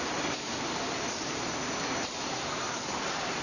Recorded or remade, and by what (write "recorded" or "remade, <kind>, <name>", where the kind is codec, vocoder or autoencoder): remade, vocoder, BigVGAN v2